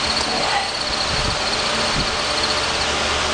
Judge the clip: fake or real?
real